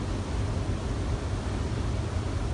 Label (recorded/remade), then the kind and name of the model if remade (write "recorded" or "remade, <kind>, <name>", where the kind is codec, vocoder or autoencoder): recorded